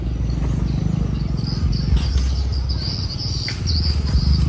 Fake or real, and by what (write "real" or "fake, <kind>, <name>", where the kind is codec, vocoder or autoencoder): real